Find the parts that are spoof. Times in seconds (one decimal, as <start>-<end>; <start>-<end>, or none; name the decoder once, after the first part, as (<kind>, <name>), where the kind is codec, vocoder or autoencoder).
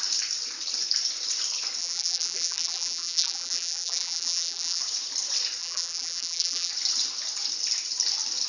1.8-4.8 (vocoder, BigVGAN v2); 5.6-6.7